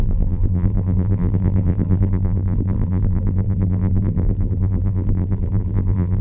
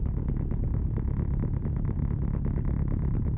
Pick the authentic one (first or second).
second